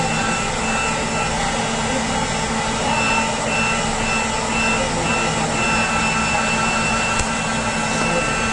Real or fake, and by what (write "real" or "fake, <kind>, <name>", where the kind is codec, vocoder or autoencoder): real